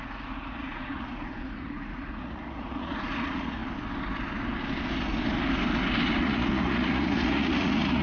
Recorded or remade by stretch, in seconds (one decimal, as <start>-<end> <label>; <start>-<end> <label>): 0.0-3.6 remade; 3.6-6.2 recorded; 6.2-8.0 remade